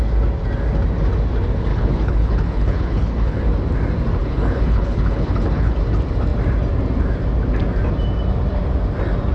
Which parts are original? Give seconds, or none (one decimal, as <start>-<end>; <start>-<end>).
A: 0.0-1.7; 3.4-4.2; 5.7-9.3